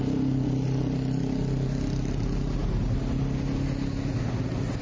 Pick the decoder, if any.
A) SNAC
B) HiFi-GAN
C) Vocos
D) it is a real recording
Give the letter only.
D